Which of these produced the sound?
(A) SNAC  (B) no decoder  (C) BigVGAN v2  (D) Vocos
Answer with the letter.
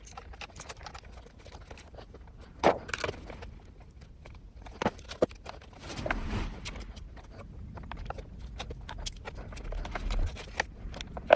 B